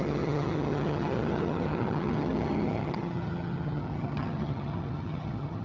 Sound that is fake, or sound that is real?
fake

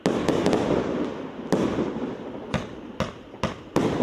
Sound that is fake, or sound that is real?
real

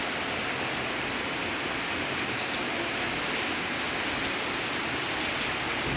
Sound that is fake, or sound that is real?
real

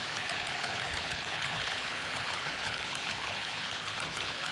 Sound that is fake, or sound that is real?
fake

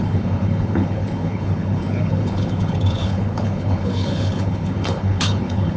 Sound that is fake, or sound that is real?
fake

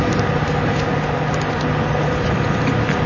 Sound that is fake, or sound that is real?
real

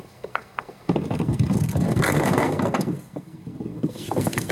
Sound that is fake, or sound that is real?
fake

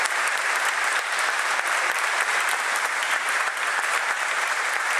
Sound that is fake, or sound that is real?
fake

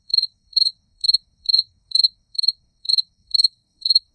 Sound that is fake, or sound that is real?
fake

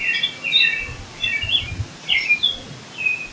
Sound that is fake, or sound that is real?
real